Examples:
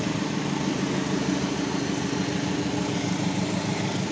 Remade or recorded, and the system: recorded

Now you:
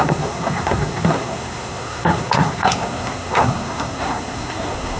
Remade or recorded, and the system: remade, codec, SNAC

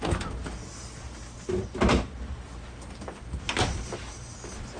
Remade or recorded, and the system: recorded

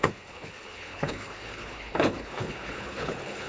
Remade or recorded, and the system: remade, codec, HILCodec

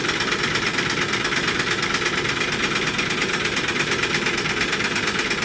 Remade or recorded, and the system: recorded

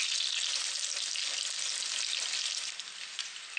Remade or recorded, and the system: recorded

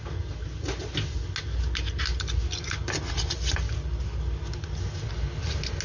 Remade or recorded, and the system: recorded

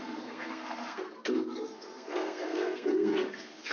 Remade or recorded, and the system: remade, codec, SNAC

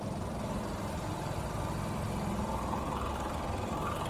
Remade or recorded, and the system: recorded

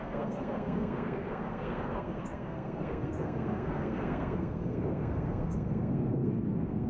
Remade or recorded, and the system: remade, codec, SNAC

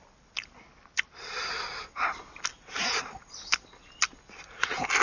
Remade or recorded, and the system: recorded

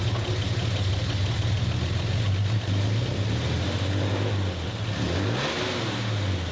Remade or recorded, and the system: recorded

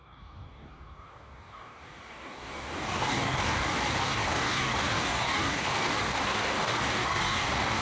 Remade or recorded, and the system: remade, codec, DAC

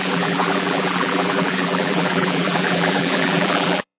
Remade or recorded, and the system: remade, vocoder, BigVGAN v2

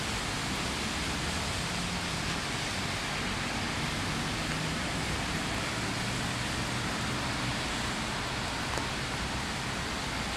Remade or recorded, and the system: recorded